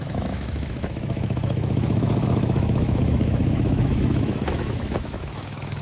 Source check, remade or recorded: remade